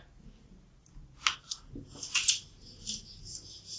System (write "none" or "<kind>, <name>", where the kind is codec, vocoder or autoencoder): none